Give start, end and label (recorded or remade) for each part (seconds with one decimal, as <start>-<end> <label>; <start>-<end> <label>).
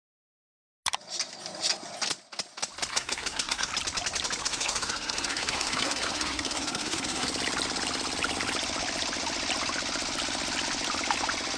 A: 0.0-0.6 remade; 0.6-2.9 recorded; 2.9-3.7 remade; 3.7-4.4 recorded; 4.4-7.3 remade; 7.3-11.6 recorded